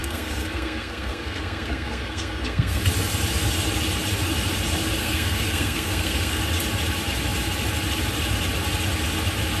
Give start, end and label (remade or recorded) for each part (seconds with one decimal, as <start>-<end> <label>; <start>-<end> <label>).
0.0-2.8 remade; 2.8-5.0 recorded; 5.0-6.4 remade; 6.4-9.6 recorded